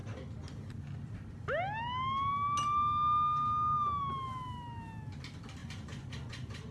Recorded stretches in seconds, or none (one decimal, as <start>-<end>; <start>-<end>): 0.0-5.6